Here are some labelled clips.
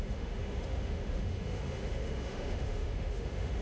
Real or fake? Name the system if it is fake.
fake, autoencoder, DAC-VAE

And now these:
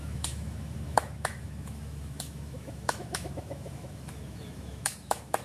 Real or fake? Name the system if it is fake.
fake, autoencoder, DAC-VAE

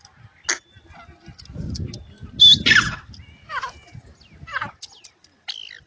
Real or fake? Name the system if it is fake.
real